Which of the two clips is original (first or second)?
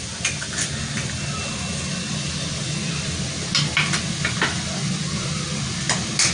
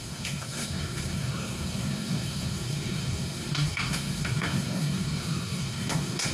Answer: first